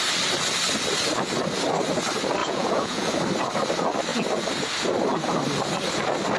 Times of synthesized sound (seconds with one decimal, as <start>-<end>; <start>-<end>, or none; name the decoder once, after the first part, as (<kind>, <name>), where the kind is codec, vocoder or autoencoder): 2.4-3.1 (vocoder, Vocos)